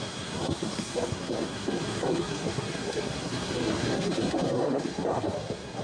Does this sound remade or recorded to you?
remade